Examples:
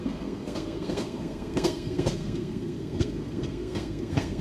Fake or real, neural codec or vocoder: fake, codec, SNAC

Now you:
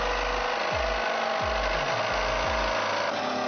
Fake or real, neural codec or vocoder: real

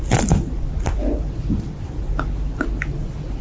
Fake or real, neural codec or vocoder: real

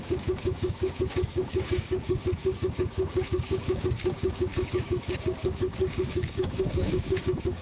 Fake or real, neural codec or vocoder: fake, codec, DAC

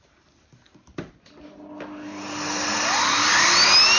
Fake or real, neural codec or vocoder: real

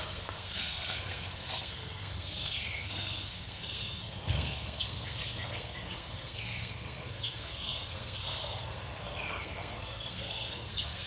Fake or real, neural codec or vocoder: fake, codec, SNAC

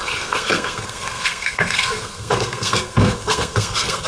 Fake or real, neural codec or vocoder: fake, codec, SNAC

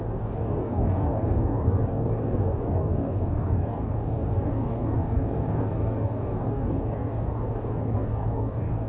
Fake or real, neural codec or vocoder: fake, codec, DAC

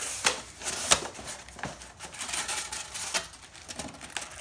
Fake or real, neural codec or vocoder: real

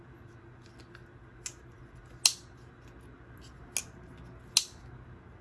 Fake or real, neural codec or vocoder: real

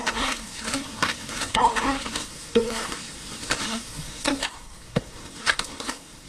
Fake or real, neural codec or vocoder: fake, codec, SNAC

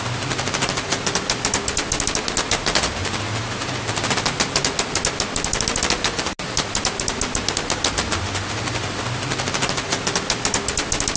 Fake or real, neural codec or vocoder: real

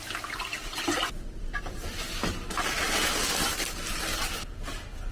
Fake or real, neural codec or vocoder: real